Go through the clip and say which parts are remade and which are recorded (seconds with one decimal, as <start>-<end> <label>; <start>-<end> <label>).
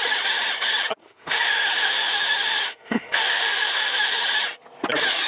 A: 0.0-1.0 recorded; 1.0-4.2 remade; 4.2-5.3 recorded